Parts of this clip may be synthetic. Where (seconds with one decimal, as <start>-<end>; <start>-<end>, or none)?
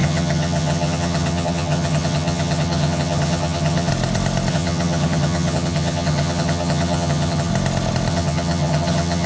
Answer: 0.0-3.9; 4.5-7.5; 8.1-9.3